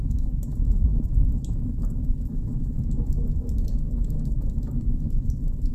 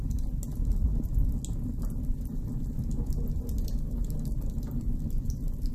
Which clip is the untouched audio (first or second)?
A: second